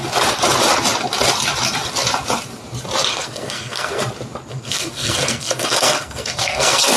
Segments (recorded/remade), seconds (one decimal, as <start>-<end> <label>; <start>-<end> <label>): 0.0-3.1 recorded; 3.1-4.0 remade; 4.0-4.5 recorded; 4.5-7.0 remade